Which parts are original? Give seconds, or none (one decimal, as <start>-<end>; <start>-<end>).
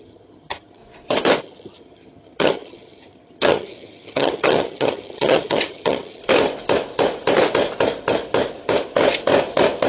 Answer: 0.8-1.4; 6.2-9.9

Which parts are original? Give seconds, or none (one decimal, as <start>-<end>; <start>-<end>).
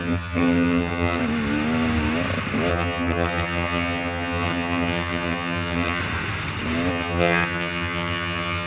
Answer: 1.2-2.7; 6.0-6.9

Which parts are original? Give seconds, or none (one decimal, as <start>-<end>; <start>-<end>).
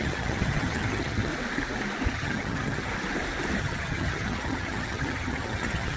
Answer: 1.3-2.1; 2.9-3.6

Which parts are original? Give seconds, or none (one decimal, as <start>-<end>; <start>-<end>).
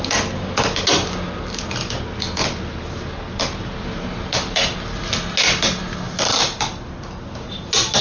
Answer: 0.0-8.0